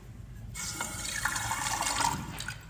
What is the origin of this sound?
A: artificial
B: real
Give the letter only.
B